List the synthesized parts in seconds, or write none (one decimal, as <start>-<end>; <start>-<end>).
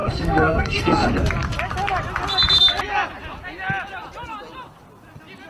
0.0-1.1